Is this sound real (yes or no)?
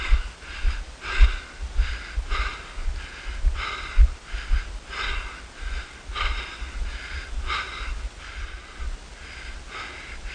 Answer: yes